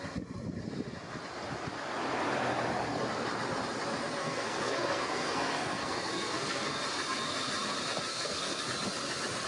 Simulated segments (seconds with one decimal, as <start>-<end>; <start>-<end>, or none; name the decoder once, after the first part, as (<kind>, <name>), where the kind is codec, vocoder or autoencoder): 4.2-6.8 (codec, SNAC); 8.1-8.6